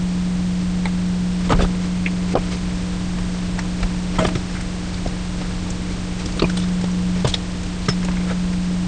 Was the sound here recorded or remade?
recorded